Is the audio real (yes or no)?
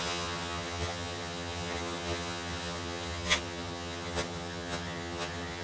no